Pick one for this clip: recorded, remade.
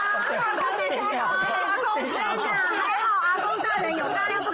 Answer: recorded